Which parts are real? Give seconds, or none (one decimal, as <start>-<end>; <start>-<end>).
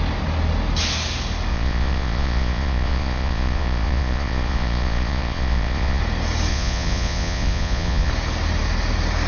0.0-1.5; 6.0-6.5; 8.1-9.3